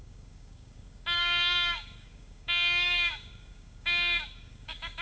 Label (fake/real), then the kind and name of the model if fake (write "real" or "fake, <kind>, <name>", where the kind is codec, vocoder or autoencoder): fake, codec, DAC